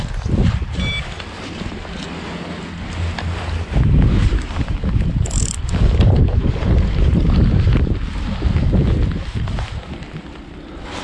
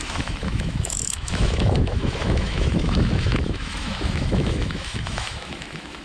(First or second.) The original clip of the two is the first